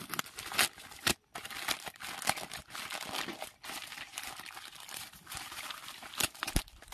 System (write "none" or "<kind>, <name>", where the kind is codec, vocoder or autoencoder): none